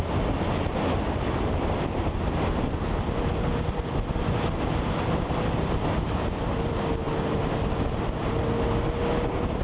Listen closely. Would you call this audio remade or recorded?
recorded